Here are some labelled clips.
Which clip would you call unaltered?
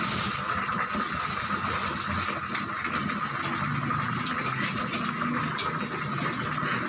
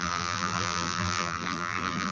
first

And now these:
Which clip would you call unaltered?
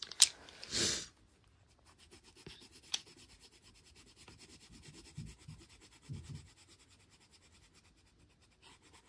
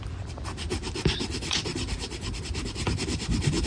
first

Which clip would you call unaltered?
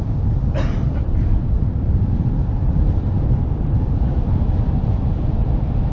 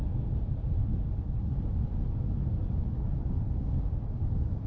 second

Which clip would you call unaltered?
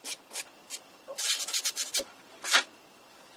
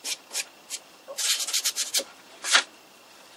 first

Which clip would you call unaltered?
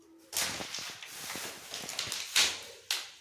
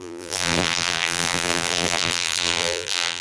first